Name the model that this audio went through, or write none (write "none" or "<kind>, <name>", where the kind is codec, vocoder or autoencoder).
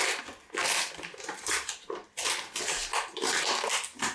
none